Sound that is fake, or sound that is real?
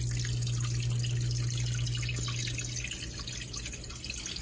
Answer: real